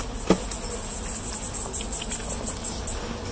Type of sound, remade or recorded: recorded